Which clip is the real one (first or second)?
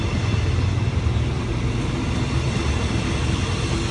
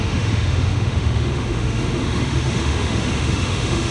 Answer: first